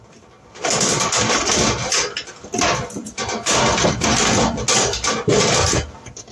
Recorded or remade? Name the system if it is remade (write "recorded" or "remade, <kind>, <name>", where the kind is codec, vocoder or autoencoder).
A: recorded